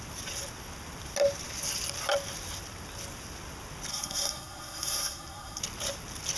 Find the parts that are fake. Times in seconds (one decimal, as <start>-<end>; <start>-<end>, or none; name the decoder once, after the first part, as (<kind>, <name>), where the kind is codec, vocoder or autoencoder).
3.9-5.6 (codec, SNAC)